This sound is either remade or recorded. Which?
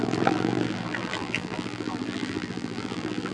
remade